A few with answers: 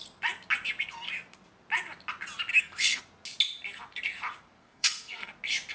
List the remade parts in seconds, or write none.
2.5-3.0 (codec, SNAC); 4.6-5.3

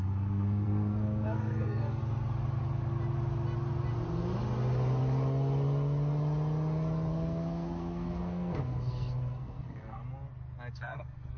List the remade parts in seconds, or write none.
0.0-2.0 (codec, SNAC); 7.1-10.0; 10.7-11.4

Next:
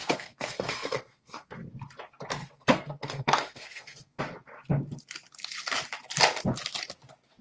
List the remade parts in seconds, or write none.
0.0-1.7 (codec, SNAC); 2.4-4.2

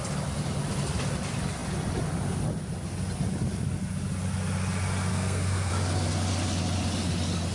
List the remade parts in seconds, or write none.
5.1-5.7 (codec, SNAC)

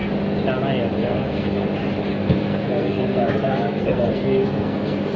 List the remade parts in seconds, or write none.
1.0-1.6 (codec, SNAC); 2.1-5.2